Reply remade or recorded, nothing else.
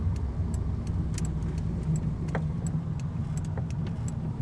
recorded